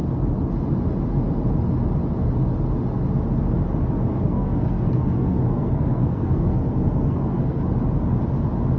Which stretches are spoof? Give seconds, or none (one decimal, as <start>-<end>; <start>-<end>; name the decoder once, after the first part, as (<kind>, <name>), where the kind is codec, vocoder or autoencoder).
4.1-7.6 (codec, SNAC)